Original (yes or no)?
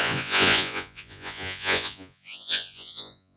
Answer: no